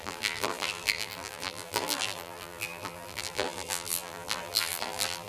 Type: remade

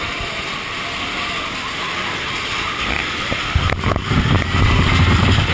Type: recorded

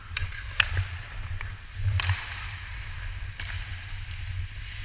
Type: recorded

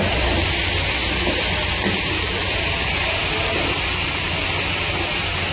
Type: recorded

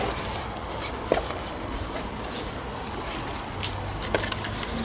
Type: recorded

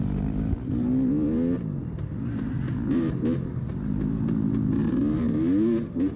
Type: recorded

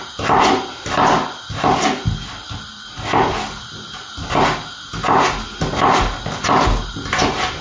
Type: recorded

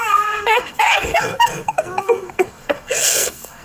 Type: remade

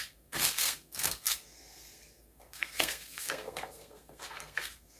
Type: remade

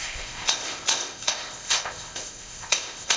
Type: remade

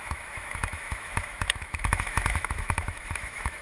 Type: remade